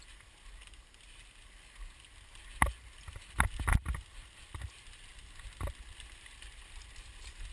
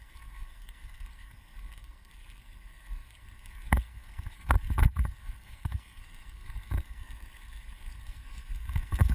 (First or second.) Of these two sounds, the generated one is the second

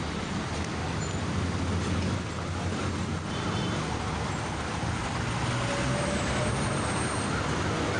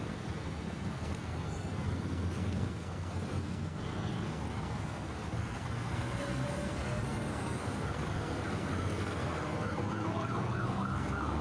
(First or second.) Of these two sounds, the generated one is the second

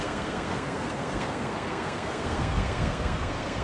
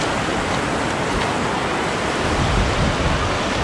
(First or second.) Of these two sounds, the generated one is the first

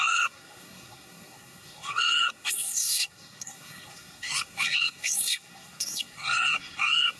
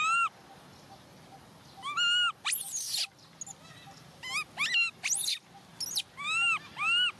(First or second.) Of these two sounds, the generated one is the first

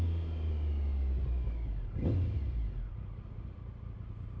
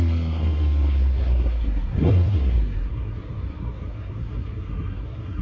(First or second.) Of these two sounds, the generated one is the second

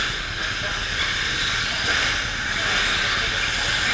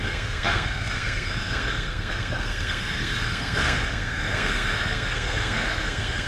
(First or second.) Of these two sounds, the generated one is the second